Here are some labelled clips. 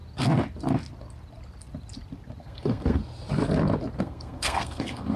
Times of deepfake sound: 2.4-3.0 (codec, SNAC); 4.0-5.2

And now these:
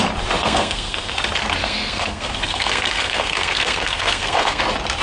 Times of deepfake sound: 0.4-1.1 (codec, SNAC); 1.6-4.6